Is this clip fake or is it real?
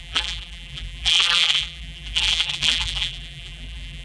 fake